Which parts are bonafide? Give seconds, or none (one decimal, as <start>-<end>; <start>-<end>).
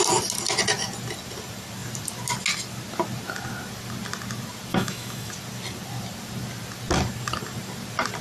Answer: 0.0-4.7; 5.3-8.2